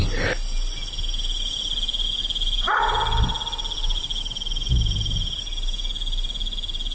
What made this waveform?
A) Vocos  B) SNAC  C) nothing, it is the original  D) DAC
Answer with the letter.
C